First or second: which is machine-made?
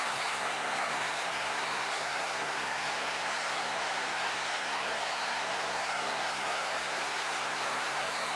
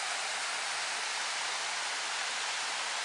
first